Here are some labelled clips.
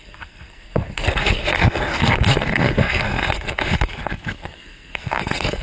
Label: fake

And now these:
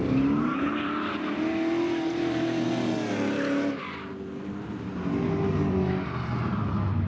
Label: real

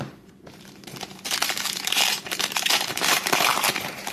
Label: fake